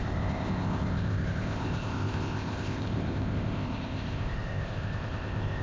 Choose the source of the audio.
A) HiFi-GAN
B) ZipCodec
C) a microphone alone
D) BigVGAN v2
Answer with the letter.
B